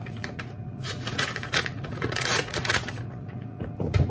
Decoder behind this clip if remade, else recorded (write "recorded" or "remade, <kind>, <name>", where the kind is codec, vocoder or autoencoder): remade, vocoder, Vocos